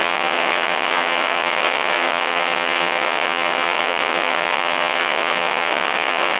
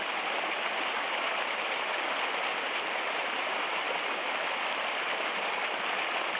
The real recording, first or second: second